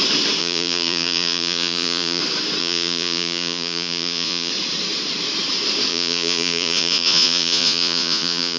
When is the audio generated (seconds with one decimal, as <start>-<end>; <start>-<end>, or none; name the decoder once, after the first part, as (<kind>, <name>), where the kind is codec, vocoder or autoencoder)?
0.4-2.2 (vocoder, Vocos); 2.6-4.5; 5.9-8.6